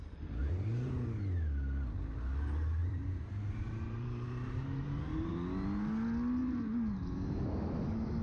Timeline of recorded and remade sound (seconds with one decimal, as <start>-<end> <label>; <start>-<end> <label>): 0.0-0.4 recorded; 0.4-0.9 remade; 0.9-2.8 recorded; 2.8-5.3 remade; 5.3-8.2 recorded